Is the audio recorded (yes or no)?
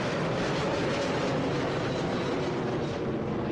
yes